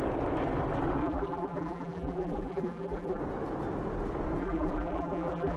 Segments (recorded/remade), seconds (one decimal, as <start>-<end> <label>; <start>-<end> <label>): 0.0-1.0 recorded; 1.0-3.2 remade; 3.2-4.4 recorded; 4.4-5.6 remade